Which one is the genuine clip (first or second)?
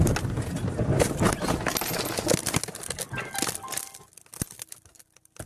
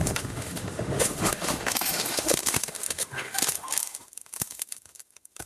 first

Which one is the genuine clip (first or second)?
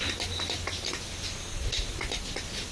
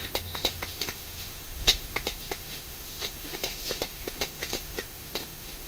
first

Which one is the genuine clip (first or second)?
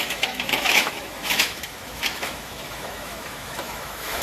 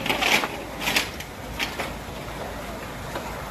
second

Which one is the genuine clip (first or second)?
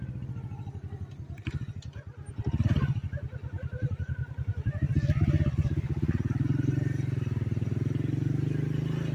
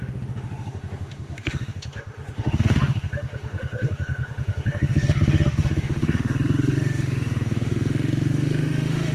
first